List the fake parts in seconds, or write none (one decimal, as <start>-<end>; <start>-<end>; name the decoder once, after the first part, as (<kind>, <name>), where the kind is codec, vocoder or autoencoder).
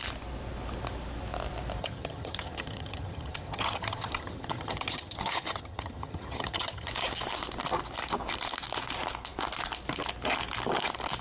1.8-6.9 (vocoder, HiFi-GAN)